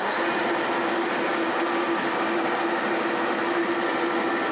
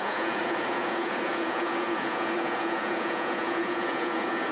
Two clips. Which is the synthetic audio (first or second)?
second